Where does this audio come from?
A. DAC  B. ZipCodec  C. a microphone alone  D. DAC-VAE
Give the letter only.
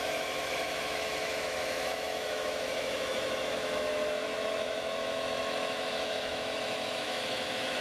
D